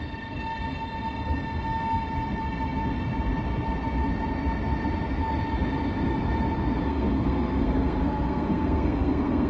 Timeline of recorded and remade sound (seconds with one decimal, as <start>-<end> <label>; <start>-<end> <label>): 0.0-6.8 recorded; 6.8-9.5 remade